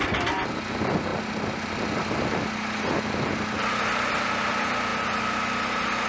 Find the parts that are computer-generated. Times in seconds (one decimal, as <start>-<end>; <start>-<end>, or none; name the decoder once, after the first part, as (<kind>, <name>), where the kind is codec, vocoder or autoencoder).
none